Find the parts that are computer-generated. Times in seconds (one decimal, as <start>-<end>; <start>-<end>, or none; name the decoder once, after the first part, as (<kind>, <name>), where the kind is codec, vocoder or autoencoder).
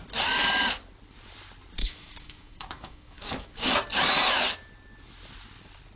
1.8-3.8 (autoencoder, DAC-VAE)